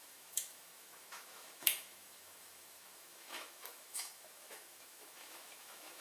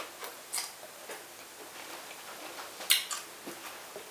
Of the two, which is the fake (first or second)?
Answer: first